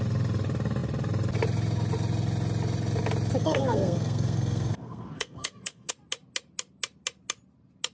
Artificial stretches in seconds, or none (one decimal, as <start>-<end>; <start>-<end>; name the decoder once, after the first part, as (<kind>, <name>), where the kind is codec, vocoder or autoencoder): 3.4-5.9 (codec, SNAC)